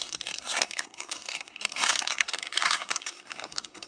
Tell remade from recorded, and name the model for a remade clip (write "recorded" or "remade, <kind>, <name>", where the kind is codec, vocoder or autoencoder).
remade, codec, SNAC